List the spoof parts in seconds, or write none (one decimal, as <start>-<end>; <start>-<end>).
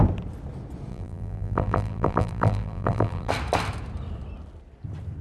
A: 0.9-3.3